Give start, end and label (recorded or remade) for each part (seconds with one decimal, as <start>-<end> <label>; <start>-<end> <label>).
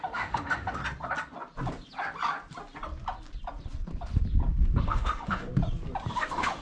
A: 0.0-0.8 remade; 0.8-4.8 recorded; 4.8-5.5 remade; 5.5-6.1 recorded; 6.1-6.6 remade